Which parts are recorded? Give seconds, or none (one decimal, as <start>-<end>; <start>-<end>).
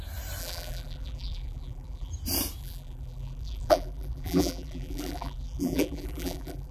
0.0-0.4; 2.1-2.6